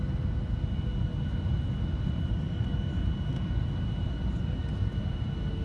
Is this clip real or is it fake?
real